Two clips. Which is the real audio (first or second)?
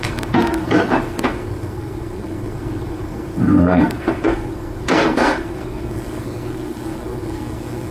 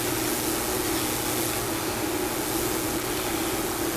second